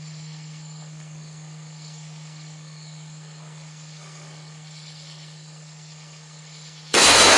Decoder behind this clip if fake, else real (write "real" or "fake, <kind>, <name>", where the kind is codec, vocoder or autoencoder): fake, codec, SNAC